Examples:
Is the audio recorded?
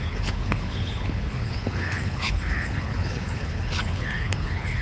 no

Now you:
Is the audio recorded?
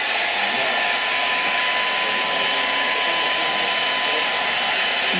yes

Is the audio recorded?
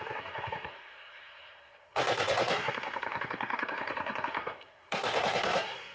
no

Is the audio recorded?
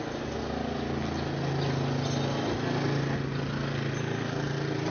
yes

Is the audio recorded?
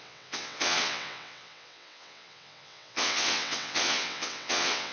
no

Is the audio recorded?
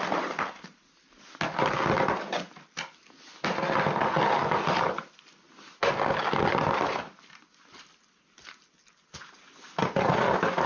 yes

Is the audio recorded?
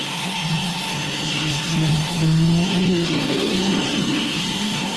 no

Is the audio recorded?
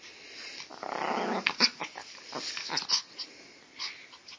yes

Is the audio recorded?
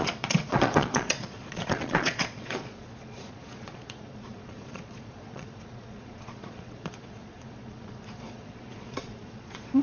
no